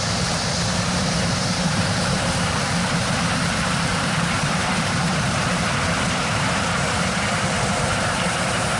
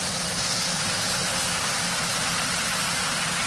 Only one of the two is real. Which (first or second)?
second